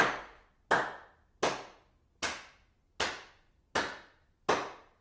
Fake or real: real